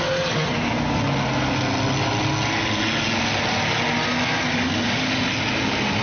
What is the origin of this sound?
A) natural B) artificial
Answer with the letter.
A